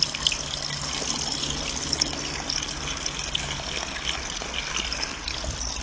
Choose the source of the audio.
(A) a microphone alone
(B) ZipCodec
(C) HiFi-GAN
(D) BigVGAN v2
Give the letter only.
A